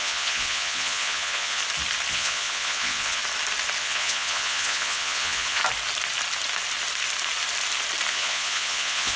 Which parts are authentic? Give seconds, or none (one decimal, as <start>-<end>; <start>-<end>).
1.6-2.1; 3.2-3.8; 5.6-8.1